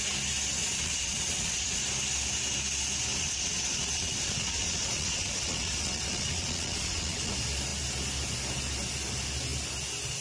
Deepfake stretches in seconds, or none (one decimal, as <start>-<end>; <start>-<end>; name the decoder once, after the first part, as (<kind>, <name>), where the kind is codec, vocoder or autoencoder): 0.6-1.8 (vocoder, Vocos); 3.2-7.3

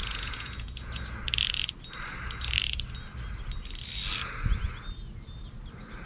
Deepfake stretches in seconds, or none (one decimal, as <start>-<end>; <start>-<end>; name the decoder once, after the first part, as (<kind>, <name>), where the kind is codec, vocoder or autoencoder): 0.0-1.0 (vocoder, Vocos)

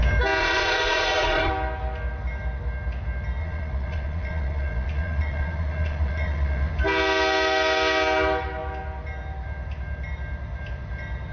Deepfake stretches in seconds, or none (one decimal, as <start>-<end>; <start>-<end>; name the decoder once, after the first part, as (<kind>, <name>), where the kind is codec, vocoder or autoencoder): 0.4-1.5 (vocoder, Vocos); 3.4-6.7